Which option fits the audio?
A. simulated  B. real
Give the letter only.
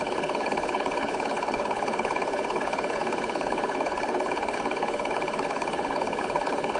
A